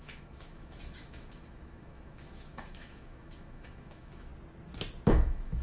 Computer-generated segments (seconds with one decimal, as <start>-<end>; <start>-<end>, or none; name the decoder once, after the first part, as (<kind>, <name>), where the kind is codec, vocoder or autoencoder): 0.0-4.3 (autoencoder, DAC-VAE); 5.1-5.6